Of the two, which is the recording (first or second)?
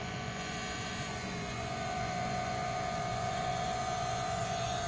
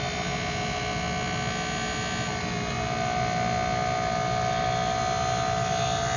second